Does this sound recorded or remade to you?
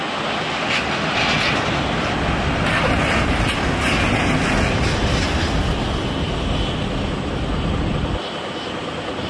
recorded